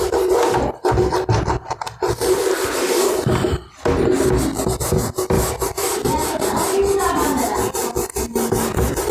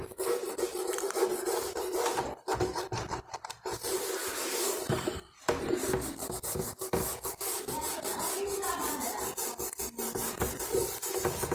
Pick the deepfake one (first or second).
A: second